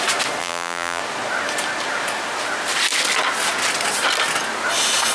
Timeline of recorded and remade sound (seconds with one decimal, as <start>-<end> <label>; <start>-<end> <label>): 0.0-0.4 recorded; 0.4-1.0 remade; 1.0-5.1 recorded